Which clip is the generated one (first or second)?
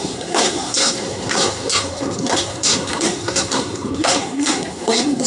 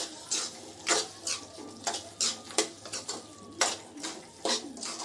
first